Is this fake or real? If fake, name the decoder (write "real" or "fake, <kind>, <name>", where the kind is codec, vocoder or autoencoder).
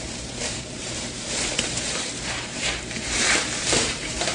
fake, vocoder, BigVGAN v2